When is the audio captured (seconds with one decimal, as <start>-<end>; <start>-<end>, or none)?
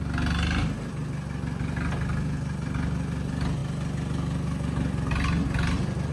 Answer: 0.0-6.1